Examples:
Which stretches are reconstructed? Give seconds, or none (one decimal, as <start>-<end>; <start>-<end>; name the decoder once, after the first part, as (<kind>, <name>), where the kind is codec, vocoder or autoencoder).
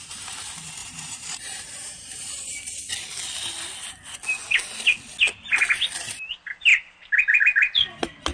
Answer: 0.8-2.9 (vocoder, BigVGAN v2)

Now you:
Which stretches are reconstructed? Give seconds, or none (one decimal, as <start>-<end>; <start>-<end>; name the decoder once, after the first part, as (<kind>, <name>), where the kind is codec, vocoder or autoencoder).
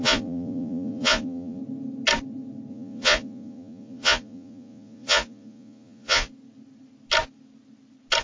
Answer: 0.0-1.6 (vocoder, Vocos); 2.7-6.3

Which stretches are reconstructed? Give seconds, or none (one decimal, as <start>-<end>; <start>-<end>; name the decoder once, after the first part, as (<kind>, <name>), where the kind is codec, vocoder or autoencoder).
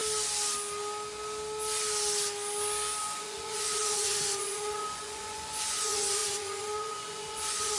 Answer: 3.0-7.8 (vocoder, Vocos)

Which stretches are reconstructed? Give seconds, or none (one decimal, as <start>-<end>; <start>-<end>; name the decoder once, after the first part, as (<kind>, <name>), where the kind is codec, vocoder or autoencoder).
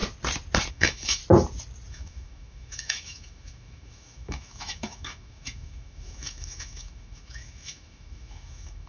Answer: 0.7-1.2 (autoencoder, DAC-VAE); 1.9-8.9